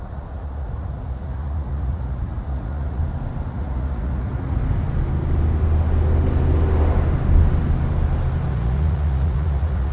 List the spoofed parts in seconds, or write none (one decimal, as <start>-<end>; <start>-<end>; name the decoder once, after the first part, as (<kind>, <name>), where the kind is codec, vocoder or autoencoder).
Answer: 0.0-3.0 (vocoder, Vocos); 3.5-4.6; 8.5-9.9

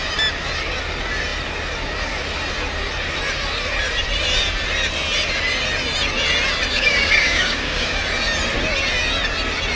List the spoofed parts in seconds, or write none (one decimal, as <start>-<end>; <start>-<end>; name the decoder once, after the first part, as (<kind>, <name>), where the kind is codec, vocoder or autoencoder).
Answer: 6.7-8.0 (codec, DAC)

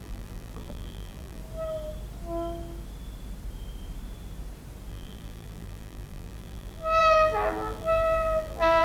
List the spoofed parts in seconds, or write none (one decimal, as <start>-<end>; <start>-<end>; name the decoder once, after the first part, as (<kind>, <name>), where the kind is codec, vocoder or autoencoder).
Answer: 0.0-1.4 (vocoder, BigVGAN v2); 4.9-8.8